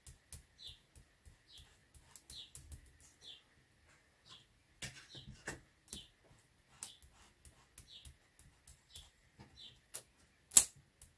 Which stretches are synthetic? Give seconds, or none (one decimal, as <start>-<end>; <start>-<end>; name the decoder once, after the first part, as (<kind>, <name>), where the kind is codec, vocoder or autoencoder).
8.7-9.4 (vocoder, BigVGAN v2)

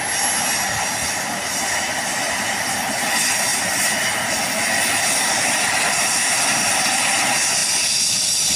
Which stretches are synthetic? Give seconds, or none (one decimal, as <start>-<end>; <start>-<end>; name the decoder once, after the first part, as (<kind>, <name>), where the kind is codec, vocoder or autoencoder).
3.5-7.0 (vocoder, BigVGAN v2)

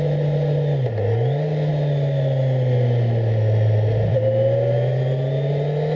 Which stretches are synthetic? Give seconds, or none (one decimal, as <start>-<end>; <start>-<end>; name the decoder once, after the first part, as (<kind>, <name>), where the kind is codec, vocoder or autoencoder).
none

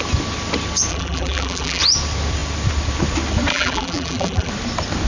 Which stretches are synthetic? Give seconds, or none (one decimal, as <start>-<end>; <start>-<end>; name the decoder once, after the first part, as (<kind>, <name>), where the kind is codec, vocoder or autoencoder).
0.9-1.8 (vocoder, BigVGAN v2); 3.5-4.5

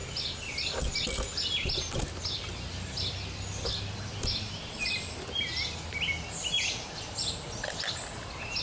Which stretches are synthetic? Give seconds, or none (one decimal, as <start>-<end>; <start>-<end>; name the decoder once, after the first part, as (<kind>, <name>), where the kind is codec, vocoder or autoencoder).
none

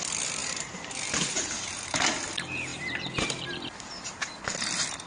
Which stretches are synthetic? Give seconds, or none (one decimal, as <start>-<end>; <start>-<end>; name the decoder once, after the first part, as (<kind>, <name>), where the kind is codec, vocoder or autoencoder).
0.4-2.2 (vocoder, BigVGAN v2); 2.7-4.2

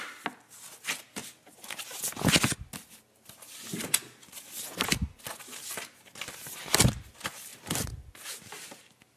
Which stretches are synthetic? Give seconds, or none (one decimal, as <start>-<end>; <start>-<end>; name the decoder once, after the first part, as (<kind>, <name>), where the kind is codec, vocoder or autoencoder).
7.5-8.5 (vocoder, BigVGAN v2)

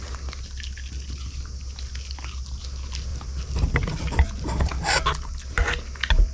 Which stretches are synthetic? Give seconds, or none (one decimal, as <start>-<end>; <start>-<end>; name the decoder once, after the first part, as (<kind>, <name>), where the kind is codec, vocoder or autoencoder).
3.1-3.8 (vocoder, BigVGAN v2)